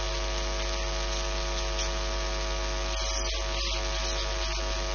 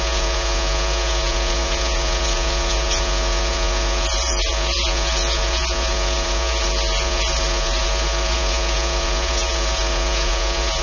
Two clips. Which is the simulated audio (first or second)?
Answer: second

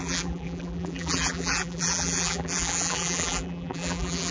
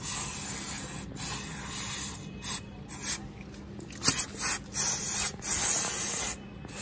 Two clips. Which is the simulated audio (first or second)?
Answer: first